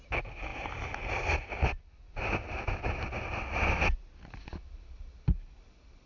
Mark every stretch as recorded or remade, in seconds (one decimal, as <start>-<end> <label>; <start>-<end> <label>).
0.0-6.1 recorded